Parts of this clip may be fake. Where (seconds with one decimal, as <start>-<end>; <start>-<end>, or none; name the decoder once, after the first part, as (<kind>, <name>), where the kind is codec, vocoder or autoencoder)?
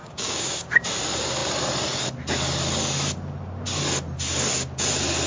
0.0-0.7 (codec, DAC)